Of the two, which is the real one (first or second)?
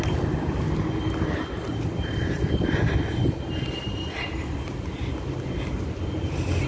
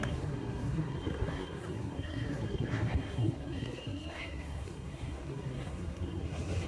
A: first